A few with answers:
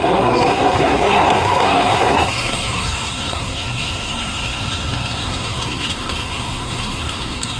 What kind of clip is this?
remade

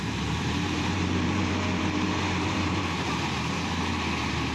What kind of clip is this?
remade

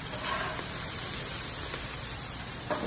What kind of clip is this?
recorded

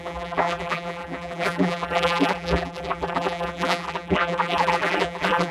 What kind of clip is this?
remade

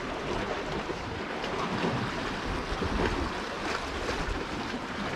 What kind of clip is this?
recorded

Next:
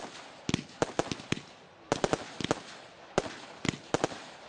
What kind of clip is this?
recorded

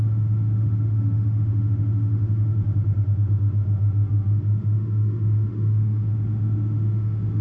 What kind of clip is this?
remade